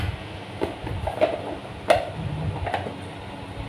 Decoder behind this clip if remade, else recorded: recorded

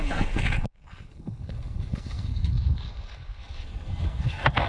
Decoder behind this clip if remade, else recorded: remade, codec, SNAC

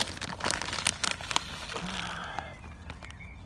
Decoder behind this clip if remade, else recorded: recorded